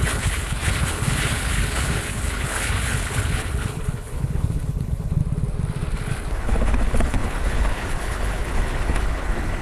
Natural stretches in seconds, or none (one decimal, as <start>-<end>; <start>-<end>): 5.2-6.4